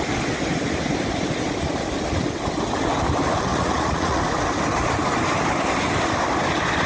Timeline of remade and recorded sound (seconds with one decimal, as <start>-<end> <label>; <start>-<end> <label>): 0.0-3.5 recorded; 3.5-4.2 remade; 4.2-6.9 recorded